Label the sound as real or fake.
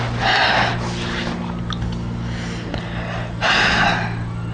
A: real